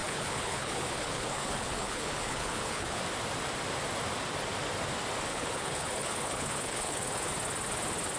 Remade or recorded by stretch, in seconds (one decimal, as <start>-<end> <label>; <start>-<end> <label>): 0.0-3.0 remade; 3.0-5.3 recorded; 5.3-7.3 remade; 7.3-8.2 recorded